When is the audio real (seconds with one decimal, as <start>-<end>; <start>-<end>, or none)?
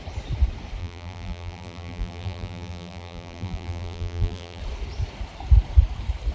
0.0-0.8; 4.6-6.3